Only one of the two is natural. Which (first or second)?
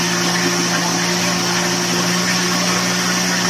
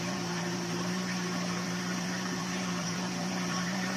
first